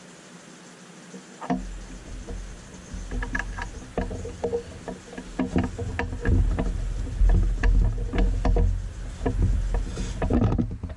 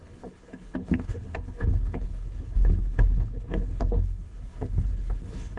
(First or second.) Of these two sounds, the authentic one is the first